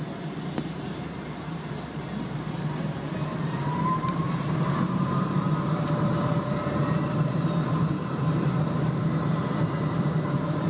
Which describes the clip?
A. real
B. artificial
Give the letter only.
B